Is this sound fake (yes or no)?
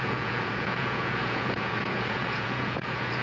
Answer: yes